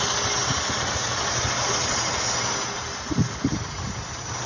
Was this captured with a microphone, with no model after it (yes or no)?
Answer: yes